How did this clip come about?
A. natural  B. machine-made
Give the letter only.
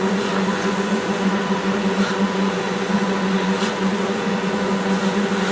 B